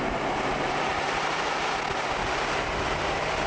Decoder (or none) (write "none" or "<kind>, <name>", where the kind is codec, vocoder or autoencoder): none